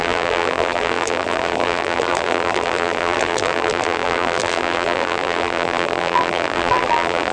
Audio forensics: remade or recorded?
remade